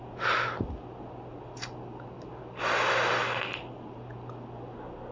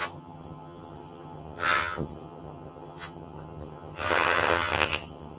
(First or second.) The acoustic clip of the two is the first